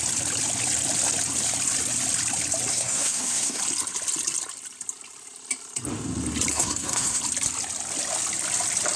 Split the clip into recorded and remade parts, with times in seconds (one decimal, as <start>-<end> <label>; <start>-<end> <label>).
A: 0.0-2.7 recorded; 2.7-3.6 remade; 3.6-6.5 recorded; 6.5-7.2 remade; 7.2-9.0 recorded